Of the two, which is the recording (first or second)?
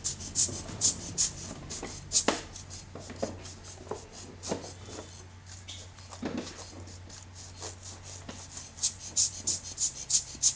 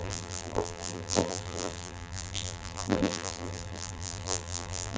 first